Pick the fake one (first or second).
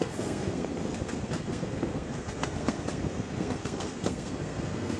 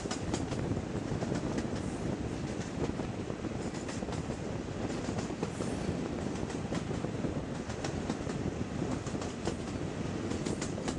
first